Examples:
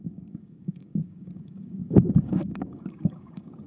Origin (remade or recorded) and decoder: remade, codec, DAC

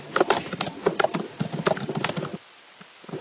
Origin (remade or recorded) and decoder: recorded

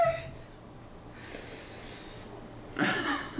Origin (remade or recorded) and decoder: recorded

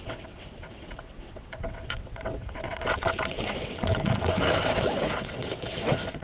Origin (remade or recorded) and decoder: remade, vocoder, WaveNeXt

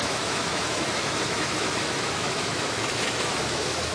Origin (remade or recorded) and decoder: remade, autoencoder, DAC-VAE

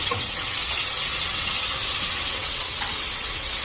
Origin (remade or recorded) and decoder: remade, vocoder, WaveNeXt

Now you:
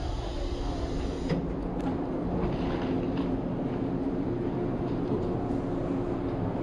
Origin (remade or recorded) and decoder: recorded